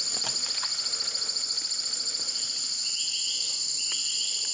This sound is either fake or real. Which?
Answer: real